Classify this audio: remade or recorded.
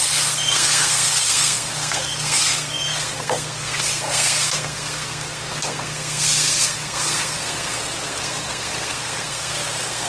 remade